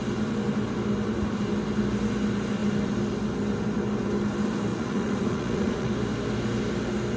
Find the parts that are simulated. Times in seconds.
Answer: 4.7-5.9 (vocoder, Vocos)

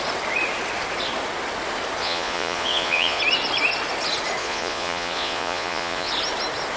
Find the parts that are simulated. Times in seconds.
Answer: 2.0-3.2 (vocoder, Vocos); 4.4-6.1

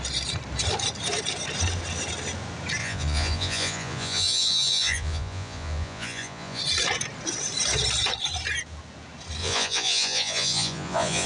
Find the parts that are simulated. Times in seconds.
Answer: 2.8-6.6 (vocoder, Vocos); 9.4-11.3

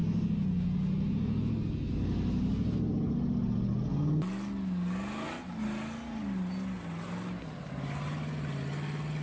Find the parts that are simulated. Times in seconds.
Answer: none

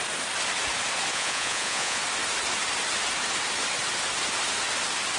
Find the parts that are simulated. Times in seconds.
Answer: 1.1-2.0 (vocoder, Vocos)

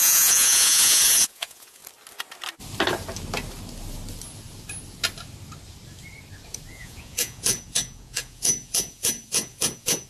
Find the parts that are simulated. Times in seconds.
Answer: 0.0-1.8 (vocoder, Vocos); 6.7-10.1

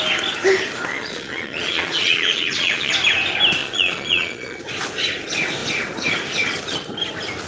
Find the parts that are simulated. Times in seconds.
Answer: 0.9-2.9 (vocoder, Vocos); 3.6-4.6